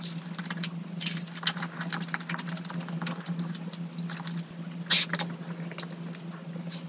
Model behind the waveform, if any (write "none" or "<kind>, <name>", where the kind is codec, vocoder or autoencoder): none